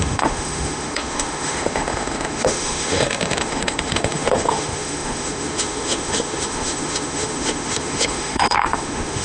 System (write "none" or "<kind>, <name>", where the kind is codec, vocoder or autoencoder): autoencoder, DAC-VAE